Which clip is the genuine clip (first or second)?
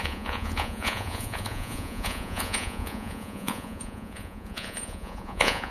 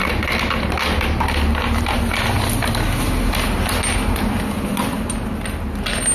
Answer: second